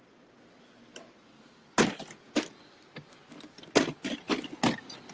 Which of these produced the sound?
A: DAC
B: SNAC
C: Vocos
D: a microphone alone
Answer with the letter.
D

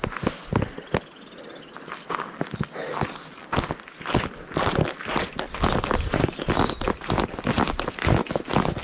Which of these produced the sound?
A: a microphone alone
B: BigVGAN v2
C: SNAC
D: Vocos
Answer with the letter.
A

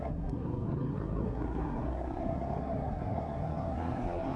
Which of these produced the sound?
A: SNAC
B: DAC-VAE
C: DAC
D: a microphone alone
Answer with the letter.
A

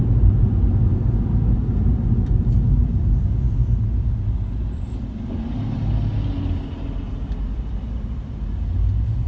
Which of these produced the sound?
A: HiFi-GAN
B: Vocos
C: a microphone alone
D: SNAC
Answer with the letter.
C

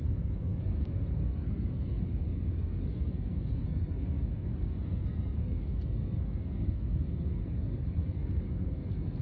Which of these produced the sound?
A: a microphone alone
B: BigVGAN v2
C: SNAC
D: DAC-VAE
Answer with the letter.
C